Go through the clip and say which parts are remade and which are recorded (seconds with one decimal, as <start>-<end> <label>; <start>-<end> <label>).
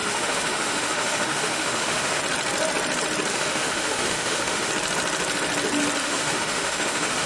0.0-2.2 remade; 2.2-3.3 recorded; 3.3-4.7 remade; 4.7-6.0 recorded; 6.0-7.3 remade